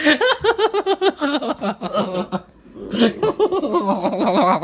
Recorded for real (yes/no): yes